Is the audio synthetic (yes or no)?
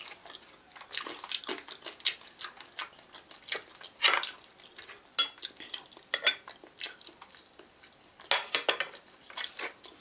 no